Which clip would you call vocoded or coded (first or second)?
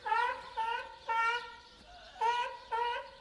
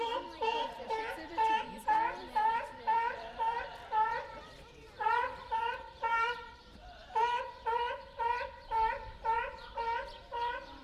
second